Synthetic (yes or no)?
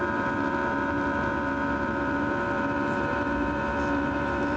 yes